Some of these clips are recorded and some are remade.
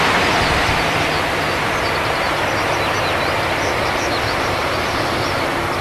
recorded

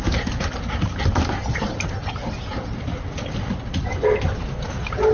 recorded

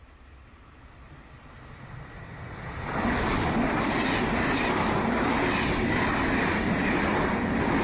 recorded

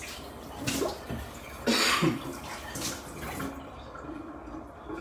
recorded